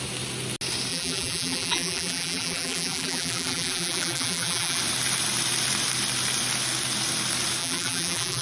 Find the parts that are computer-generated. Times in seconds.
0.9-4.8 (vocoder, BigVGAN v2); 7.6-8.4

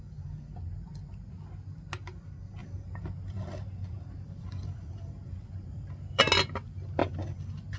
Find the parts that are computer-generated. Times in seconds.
2.6-6.2 (vocoder, BigVGAN v2); 7.0-7.8

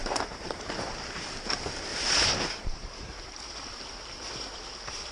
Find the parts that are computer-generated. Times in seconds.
0.0-1.5 (vocoder, BigVGAN v2); 1.9-5.1

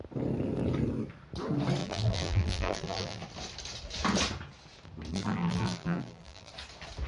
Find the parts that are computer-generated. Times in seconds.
1.8-3.2 (vocoder, BigVGAN v2); 5.1-6.5

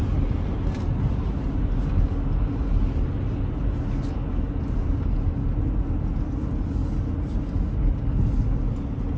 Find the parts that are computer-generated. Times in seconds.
none